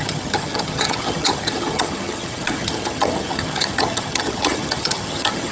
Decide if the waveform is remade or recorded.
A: remade